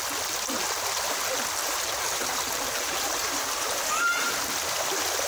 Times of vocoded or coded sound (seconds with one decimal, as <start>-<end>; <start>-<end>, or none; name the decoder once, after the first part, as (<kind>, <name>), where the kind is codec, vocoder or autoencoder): 1.6-4.3 (vocoder, BigVGAN v2)